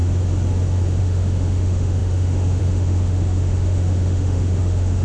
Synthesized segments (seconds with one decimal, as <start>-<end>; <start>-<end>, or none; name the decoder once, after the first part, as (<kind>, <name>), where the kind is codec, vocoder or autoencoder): 1.0-5.0 (autoencoder, DAC-VAE)